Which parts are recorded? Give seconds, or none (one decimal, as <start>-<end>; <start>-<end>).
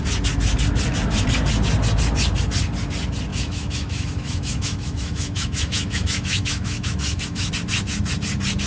0.0-3.3; 7.5-8.7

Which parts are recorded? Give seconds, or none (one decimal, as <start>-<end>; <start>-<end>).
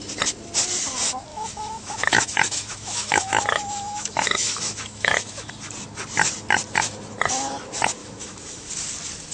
0.0-1.3; 5.5-8.0; 8.7-9.3